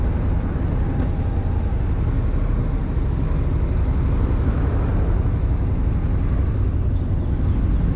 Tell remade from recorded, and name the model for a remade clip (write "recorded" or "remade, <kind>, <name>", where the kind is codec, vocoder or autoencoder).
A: recorded